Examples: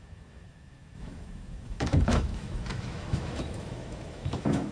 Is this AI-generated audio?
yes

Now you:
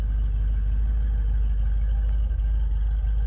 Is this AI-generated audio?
no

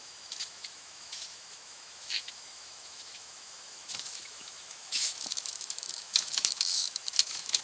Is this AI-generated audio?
yes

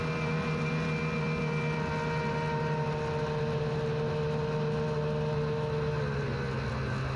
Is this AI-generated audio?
no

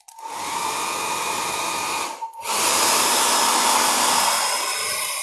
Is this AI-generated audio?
no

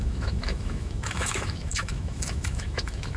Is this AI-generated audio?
yes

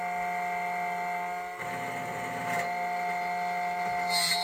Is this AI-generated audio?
no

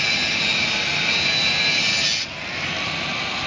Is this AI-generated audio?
no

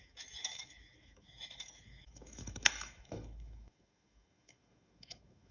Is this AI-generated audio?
yes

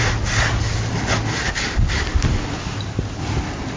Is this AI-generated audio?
no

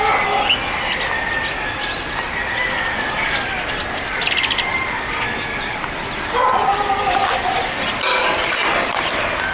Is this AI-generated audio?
no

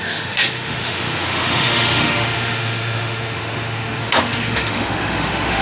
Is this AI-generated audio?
yes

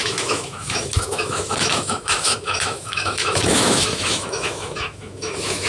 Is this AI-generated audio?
yes